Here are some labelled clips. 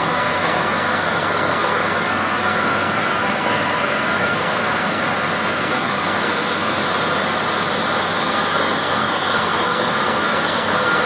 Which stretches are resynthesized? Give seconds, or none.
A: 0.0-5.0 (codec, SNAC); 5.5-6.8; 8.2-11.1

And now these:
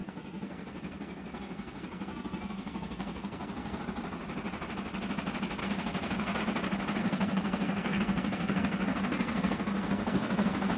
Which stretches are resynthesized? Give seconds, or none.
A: 0.0-3.8 (codec, SNAC); 5.6-6.4; 7.0-10.8

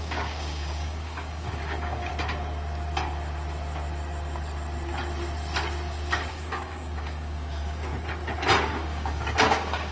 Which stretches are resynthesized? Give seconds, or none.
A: 0.0-2.1 (codec, DAC); 6.3-7.9; 8.7-9.9

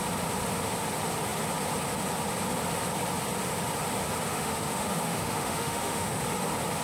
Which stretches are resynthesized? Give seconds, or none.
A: 4.3-6.2 (autoencoder, DAC-VAE)

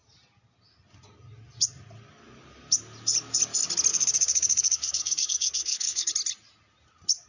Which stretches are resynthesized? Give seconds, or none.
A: 3.9-6.1 (codec, SNAC)

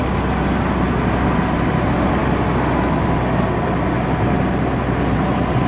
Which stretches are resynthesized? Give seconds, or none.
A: none

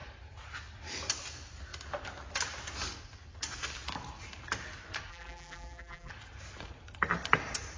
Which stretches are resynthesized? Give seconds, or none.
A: 5.1-6.1 (vocoder, BigVGAN v2)